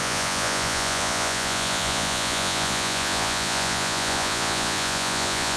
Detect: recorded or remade remade